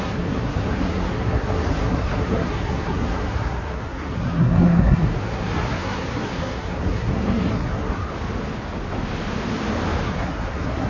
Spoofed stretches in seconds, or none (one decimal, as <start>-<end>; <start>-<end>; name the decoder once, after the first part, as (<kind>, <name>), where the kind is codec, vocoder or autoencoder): 0.0-8.0 (codec, SNAC); 10.0-10.9